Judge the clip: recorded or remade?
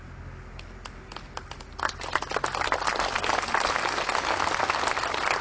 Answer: recorded